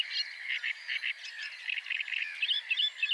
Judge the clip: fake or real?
real